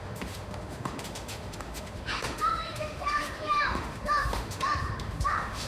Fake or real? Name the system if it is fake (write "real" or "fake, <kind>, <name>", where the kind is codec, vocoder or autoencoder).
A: fake, autoencoder, DAC-VAE